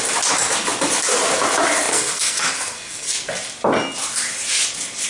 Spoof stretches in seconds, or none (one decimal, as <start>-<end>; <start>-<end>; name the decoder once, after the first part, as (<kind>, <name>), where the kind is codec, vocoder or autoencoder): 1.9-3.3 (codec, SNAC)